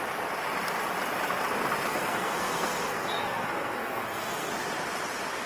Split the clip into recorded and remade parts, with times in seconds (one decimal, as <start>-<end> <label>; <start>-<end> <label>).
0.0-1.9 recorded; 1.9-4.5 remade; 4.5-5.5 recorded